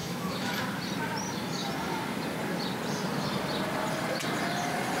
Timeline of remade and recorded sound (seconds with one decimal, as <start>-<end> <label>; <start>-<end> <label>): 0.0-0.6 remade; 0.6-5.0 recorded